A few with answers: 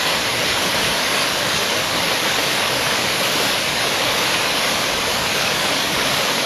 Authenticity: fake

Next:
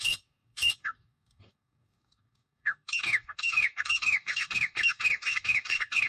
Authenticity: fake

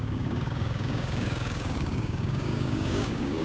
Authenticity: fake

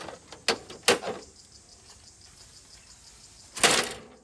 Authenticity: real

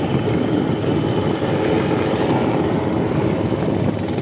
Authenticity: real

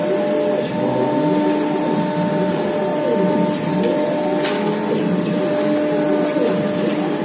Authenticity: real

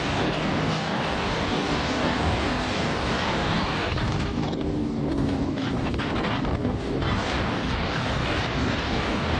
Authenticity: fake